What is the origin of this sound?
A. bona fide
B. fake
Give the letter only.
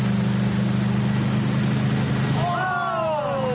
A